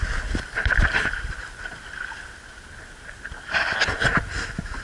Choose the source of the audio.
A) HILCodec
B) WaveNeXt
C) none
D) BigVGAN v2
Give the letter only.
C